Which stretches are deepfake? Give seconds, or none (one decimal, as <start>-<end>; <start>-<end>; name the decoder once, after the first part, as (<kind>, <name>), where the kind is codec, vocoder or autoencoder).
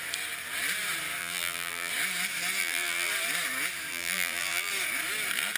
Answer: 1.2-1.9 (vocoder, BigVGAN v2); 2.6-3.1; 3.9-4.7